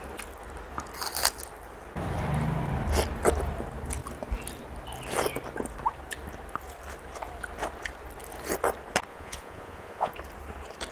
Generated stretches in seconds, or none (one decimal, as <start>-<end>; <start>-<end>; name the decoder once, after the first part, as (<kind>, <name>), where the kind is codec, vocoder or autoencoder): 9.1-10.1 (vocoder, Vocos)